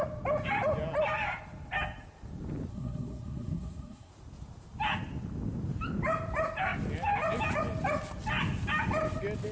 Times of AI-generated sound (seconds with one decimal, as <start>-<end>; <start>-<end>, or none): 2.7-4.1